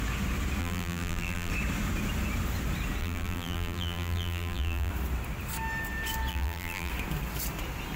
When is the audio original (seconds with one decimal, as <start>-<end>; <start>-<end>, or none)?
0.0-0.6; 1.5-3.0; 4.9-6.3; 6.9-8.0